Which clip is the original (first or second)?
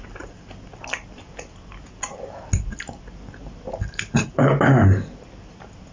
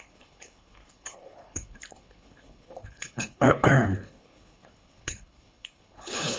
first